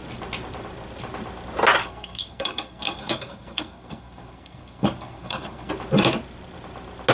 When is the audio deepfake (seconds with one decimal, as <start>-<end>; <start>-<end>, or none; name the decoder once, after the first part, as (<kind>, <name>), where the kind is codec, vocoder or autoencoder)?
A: 1.8-5.7 (codec, SNAC)